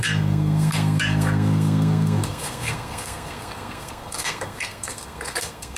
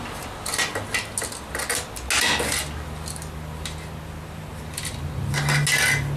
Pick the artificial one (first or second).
first